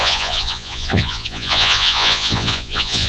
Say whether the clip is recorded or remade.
remade